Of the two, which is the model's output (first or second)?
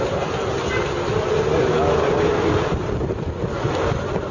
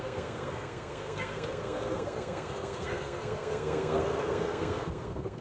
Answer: second